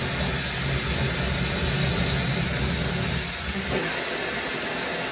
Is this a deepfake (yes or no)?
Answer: no